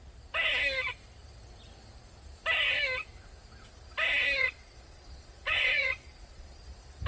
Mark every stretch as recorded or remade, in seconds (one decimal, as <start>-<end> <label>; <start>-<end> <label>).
0.0-4.4 recorded; 4.4-6.6 remade; 6.6-7.1 recorded

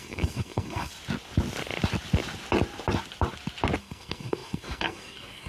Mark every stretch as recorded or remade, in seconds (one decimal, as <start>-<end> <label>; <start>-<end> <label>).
0.0-0.9 remade; 0.9-3.8 recorded; 3.8-5.5 remade

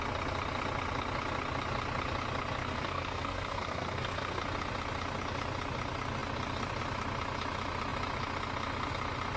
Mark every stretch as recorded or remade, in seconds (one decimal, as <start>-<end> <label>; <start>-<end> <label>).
0.0-2.6 recorded; 2.6-4.4 remade; 4.4-9.4 recorded

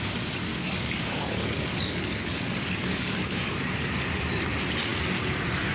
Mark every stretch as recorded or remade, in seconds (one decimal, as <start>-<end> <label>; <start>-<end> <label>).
0.0-0.5 recorded; 0.5-3.9 remade; 3.9-5.7 recorded

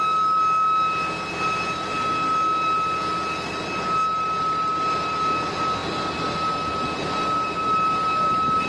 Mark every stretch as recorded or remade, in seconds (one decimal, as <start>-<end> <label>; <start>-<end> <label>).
0.0-8.7 recorded

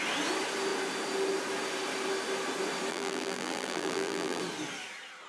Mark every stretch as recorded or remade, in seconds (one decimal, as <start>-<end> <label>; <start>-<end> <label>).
0.0-2.9 recorded; 2.9-4.4 remade; 4.4-5.3 recorded